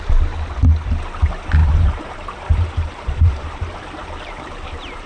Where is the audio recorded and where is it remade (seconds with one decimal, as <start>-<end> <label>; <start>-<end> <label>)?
0.0-1.6 recorded; 1.6-5.1 remade